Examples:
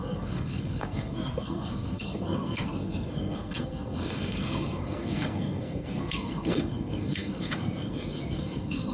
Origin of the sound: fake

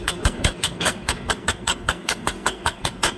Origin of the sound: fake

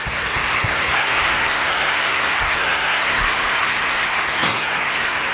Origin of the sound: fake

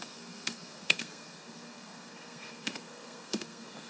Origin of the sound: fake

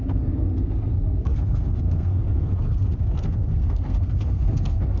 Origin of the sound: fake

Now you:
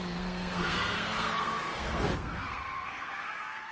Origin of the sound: fake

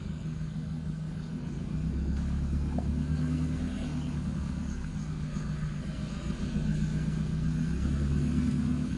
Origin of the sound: fake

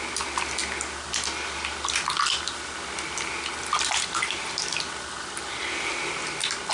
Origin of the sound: real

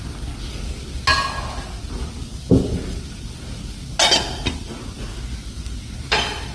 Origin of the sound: real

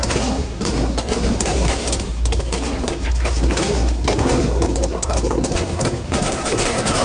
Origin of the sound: fake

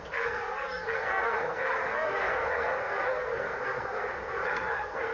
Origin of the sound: fake